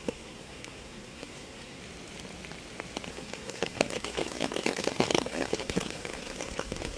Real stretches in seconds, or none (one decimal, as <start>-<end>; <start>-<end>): 1.8-3.1